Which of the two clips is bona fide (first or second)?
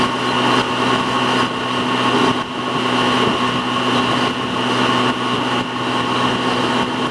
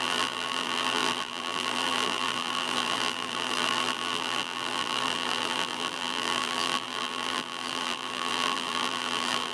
first